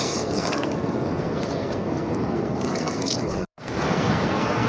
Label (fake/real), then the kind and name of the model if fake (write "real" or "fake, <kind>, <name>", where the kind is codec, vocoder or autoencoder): fake, codec, SNAC